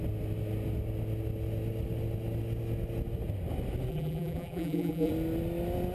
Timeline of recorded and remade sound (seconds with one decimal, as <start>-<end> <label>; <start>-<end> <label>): 0.0-3.9 recorded; 3.9-5.1 remade; 5.1-5.9 recorded